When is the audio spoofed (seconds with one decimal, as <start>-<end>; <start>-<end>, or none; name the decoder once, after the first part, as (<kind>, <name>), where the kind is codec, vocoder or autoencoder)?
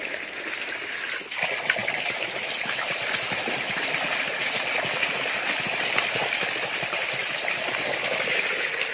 none